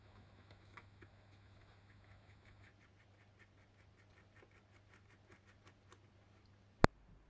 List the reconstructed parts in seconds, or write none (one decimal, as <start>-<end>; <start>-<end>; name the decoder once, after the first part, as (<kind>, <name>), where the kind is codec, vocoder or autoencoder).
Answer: 0.0-2.7 (autoencoder, DAC-VAE)